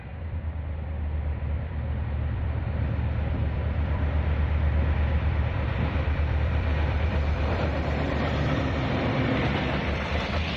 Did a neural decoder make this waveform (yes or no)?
yes